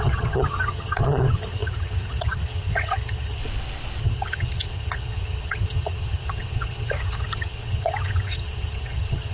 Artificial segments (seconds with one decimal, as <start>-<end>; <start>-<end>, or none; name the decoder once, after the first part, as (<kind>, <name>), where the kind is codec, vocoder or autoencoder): 0.0-3.4 (vocoder, HiFi-GAN); 4.0-9.3